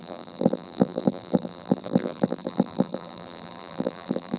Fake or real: fake